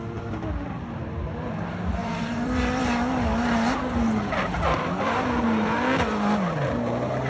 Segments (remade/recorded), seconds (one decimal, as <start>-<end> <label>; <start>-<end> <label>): 0.0-2.0 recorded; 2.0-2.8 remade; 2.8-7.3 recorded

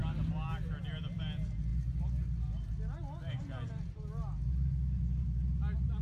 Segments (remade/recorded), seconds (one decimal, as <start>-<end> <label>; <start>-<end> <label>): 0.0-6.0 recorded

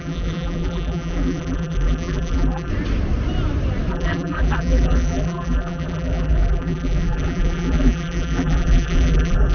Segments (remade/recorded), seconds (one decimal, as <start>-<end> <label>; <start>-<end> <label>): 0.0-2.7 remade; 2.7-3.9 recorded; 3.9-9.5 remade

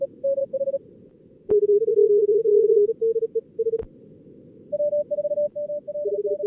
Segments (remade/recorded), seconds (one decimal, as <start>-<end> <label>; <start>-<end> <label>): 0.0-0.4 recorded; 0.4-1.9 remade; 1.9-6.5 recorded

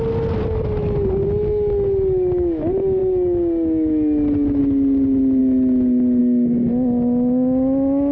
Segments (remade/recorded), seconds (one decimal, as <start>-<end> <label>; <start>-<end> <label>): 0.0-8.1 recorded

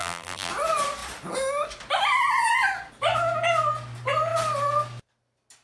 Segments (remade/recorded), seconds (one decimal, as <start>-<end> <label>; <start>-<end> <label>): 0.0-0.5 remade; 0.5-5.6 recorded

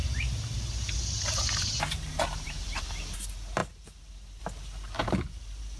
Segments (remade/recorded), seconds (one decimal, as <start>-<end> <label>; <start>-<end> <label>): 0.0-2.8 remade; 2.8-5.0 recorded; 5.0-5.8 remade

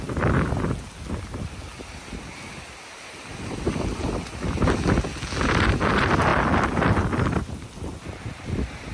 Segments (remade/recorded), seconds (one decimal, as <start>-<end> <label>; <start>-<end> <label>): 0.0-3.3 recorded; 3.3-4.1 remade; 4.1-8.9 recorded